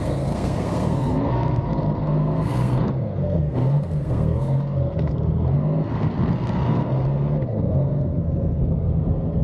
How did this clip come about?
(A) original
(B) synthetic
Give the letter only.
B